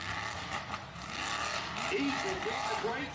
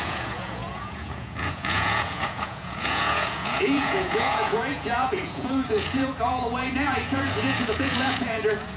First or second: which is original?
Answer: first